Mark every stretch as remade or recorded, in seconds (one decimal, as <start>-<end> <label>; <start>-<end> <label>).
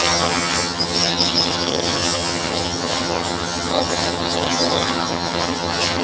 0.0-6.0 remade